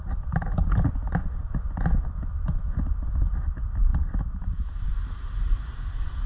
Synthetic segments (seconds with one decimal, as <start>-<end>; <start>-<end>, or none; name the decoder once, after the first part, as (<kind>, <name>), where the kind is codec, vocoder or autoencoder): none